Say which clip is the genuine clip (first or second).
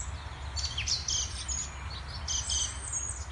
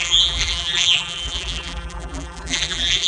first